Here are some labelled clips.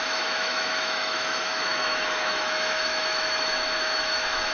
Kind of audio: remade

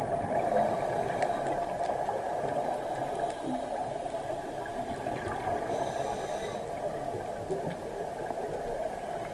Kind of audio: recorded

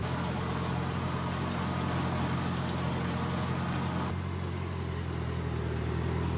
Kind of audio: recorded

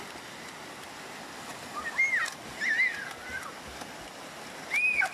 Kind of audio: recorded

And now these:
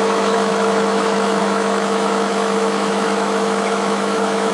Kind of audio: remade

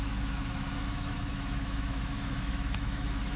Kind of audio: remade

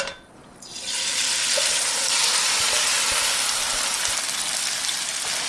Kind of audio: recorded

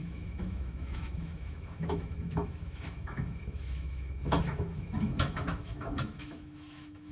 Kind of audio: remade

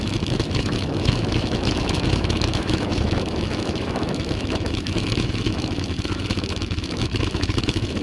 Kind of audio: remade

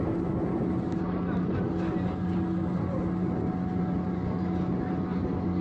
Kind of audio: recorded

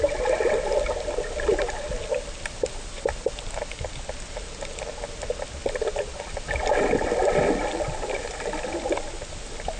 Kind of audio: recorded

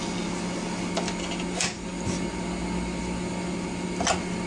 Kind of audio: recorded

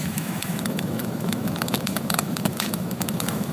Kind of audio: remade